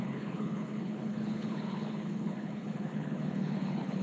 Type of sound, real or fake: fake